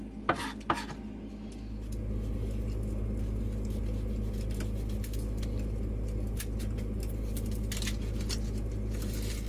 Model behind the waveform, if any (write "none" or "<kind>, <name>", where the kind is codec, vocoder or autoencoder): none